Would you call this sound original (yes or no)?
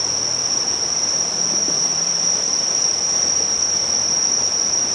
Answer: no